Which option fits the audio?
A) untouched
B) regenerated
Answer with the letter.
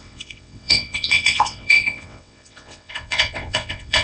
B